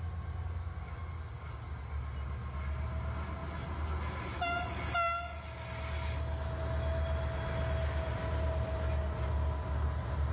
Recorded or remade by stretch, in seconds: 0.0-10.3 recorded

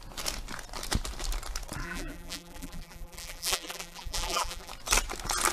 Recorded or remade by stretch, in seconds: 0.0-1.8 recorded; 1.8-4.7 remade; 4.7-5.5 recorded

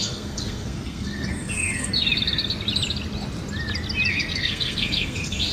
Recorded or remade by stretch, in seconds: 0.0-1.9 remade; 1.9-4.1 recorded; 4.1-5.5 remade

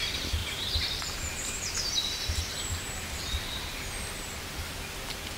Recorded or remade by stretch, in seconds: 0.0-0.4 recorded; 0.4-3.6 remade; 3.6-5.4 recorded

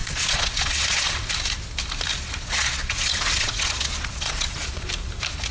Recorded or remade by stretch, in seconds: 0.0-1.2 remade; 1.2-2.1 recorded; 2.1-4.9 remade; 4.9-5.5 recorded

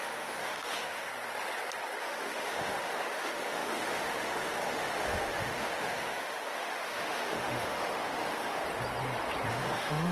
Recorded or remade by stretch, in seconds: 0.0-1.1 remade; 1.1-2.0 recorded; 2.0-8.6 remade; 8.6-9.5 recorded; 9.5-10.1 remade

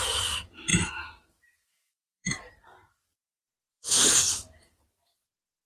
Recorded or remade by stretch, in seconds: 0.0-0.7 recorded; 0.7-2.4 remade; 2.4-3.7 recorded; 3.7-4.8 remade; 4.8-5.7 recorded